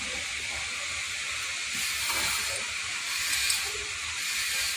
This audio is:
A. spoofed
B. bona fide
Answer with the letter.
B